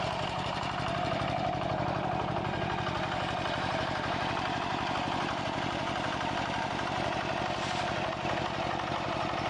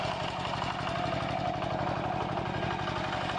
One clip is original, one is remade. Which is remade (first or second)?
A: first